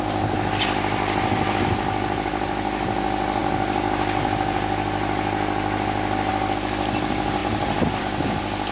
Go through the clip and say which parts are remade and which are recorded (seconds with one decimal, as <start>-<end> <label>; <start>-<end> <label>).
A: 0.0-8.7 recorded